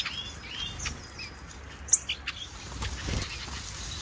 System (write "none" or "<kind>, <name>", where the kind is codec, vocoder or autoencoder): none